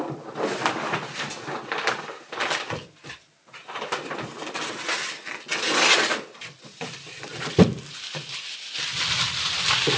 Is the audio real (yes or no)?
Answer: no